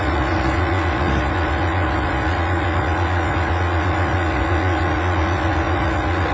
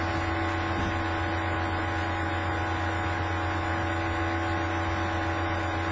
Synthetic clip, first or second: first